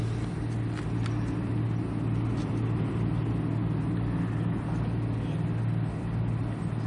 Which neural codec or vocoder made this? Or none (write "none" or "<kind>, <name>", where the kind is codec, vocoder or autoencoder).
none